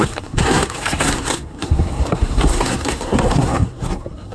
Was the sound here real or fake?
fake